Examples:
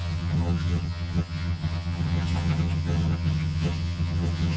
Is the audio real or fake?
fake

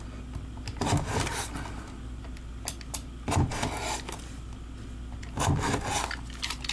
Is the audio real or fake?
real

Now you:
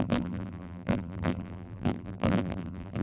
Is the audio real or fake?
fake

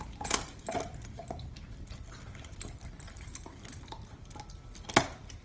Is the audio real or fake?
real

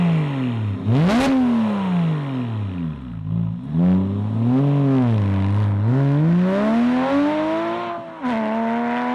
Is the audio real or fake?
real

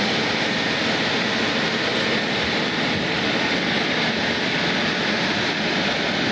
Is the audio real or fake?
real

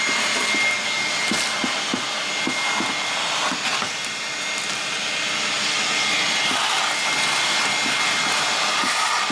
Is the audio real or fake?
real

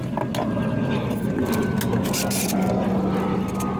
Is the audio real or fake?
real